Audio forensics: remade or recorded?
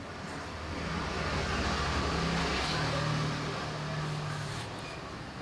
recorded